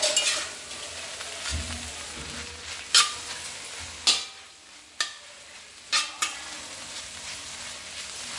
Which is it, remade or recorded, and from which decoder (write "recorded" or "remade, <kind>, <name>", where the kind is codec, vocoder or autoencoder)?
recorded